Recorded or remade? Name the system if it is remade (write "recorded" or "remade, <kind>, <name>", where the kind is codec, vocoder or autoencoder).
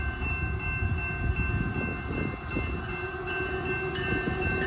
recorded